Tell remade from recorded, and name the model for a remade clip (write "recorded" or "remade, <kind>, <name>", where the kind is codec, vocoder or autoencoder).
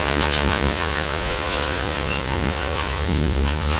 remade, vocoder, Vocos